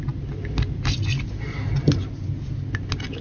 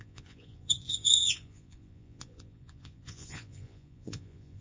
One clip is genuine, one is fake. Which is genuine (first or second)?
first